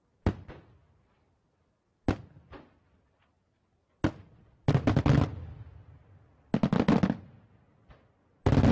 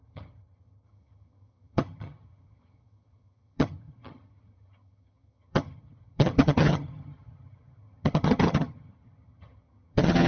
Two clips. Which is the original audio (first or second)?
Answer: first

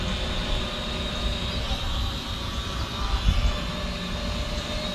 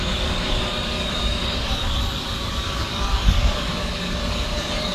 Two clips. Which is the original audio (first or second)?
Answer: first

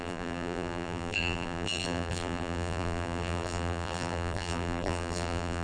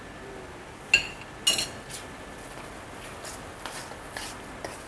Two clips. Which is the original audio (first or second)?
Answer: second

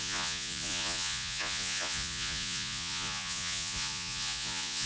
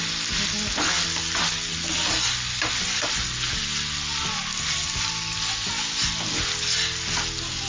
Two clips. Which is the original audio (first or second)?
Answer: second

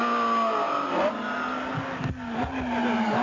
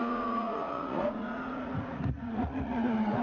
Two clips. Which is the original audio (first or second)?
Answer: first